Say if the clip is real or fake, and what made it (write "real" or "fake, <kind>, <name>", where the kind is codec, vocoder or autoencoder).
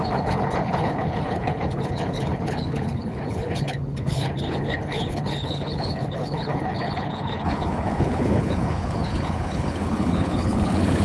fake, codec, HILCodec